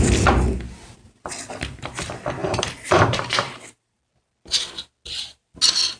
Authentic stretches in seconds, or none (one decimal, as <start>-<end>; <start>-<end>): 0.0-2.4; 4.0-6.0